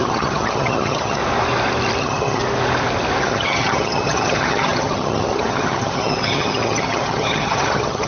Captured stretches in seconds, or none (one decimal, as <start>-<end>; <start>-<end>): 1.2-2.0; 2.4-3.2